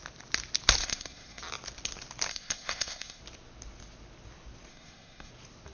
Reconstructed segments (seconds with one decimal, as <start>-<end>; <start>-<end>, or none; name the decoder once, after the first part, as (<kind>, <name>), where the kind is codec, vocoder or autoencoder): 0.8-1.4 (codec, SNAC); 2.3-3.2; 4.7-5.3